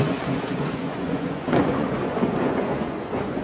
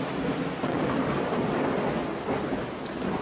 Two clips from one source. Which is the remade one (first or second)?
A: first